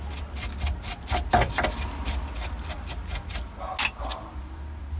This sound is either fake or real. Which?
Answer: real